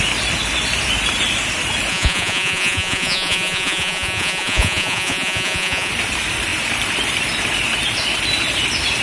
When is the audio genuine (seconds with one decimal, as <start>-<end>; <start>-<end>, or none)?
0.0-1.9; 5.9-9.0